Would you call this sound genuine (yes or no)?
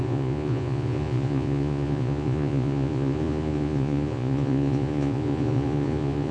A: no